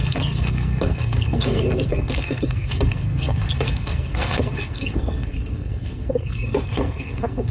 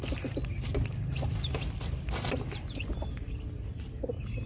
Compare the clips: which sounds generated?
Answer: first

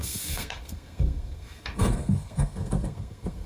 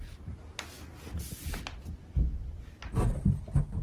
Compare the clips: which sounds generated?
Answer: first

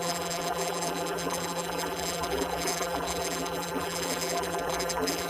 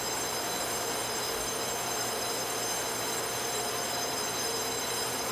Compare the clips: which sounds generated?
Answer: first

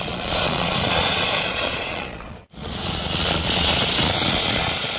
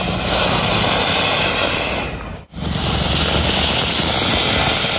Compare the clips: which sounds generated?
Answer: first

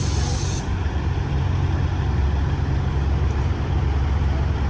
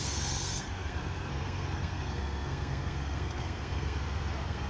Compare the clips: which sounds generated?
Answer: second